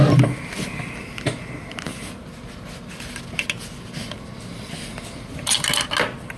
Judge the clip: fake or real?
real